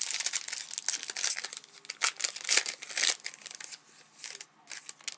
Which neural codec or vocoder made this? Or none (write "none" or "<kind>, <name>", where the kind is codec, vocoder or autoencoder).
none